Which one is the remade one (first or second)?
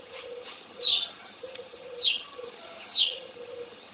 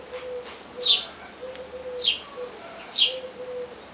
first